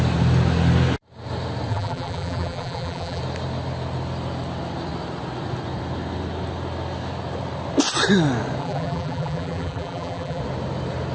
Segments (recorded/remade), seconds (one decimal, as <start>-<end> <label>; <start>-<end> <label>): 0.0-1.7 recorded; 1.7-3.2 remade; 3.2-8.6 recorded; 8.6-10.4 remade; 10.4-11.1 recorded